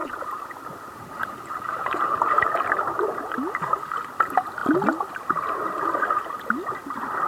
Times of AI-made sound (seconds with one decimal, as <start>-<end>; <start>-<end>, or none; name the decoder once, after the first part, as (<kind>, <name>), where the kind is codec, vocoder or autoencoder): 0.0-3.2 (vocoder, BigVGAN v2)